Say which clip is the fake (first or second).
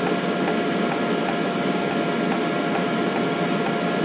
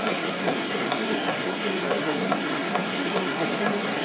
second